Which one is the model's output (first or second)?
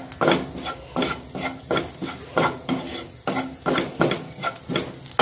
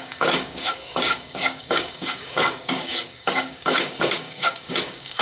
second